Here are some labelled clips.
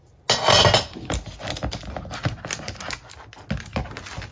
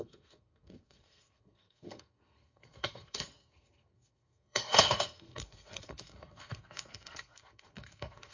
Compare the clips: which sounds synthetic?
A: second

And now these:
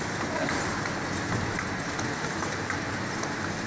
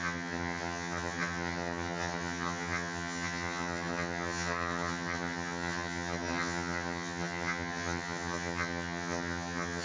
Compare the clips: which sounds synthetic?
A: second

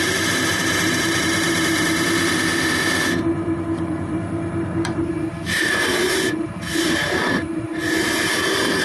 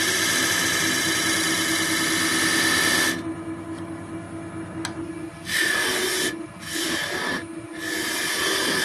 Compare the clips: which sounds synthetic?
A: first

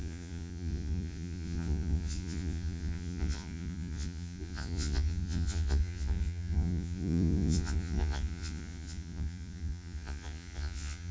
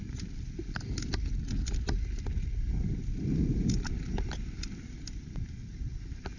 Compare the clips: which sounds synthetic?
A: first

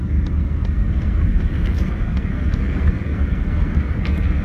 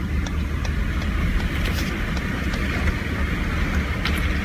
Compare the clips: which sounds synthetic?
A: first